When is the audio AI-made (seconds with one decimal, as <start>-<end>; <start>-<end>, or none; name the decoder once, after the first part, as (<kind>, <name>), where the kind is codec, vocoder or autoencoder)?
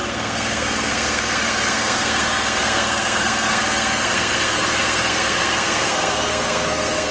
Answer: 0.0-7.1 (codec, SNAC)